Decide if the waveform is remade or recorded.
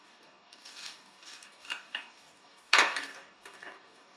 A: remade